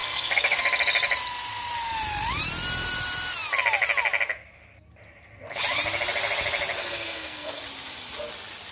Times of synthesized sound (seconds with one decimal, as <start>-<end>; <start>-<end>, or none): 0.0-0.6; 6.8-7.6